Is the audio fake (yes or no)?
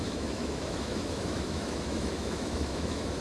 yes